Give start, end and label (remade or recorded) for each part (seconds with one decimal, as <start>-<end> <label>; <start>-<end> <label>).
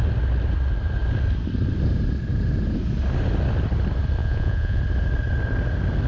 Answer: 0.0-4.2 recorded; 4.2-4.8 remade; 4.8-6.1 recorded